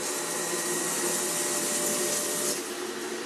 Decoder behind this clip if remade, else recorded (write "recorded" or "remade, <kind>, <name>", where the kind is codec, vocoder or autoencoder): recorded